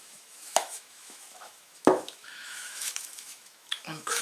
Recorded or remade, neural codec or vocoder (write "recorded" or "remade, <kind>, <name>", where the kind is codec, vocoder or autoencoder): remade, autoencoder, DAC-VAE